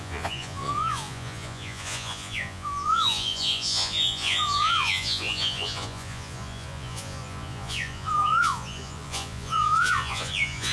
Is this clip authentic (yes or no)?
no